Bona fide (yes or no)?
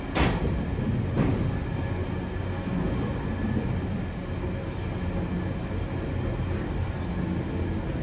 yes